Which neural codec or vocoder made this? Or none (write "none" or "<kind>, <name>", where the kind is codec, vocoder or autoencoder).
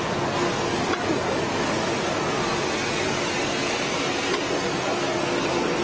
none